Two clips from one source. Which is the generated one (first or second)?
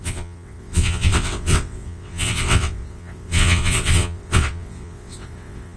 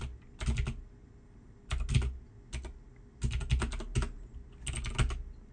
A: first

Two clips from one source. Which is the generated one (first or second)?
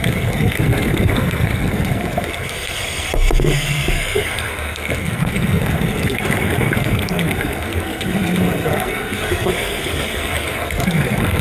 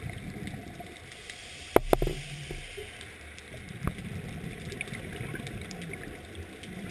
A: first